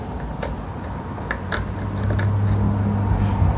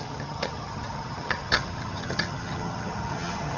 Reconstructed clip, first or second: second